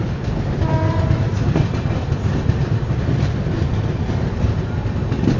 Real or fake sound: real